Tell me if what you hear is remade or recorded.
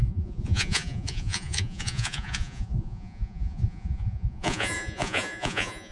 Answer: remade